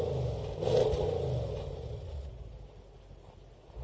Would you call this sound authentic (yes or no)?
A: yes